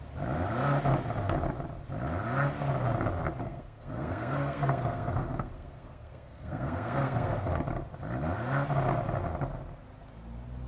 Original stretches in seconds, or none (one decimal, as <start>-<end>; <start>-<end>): 0.0-3.4; 7.5-10.7